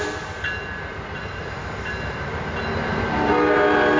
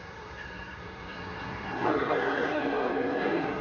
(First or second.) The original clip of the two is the first